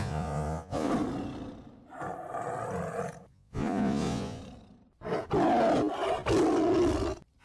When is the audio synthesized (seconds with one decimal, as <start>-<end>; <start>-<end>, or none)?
0.0-0.9; 3.3-4.4